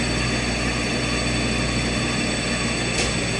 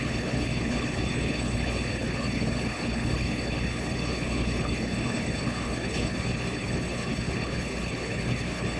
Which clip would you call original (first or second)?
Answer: first